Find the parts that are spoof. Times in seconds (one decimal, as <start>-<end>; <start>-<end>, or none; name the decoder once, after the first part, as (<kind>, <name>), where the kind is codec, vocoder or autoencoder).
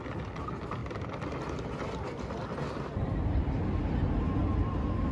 none